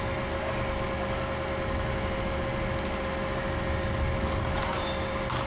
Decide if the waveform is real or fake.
real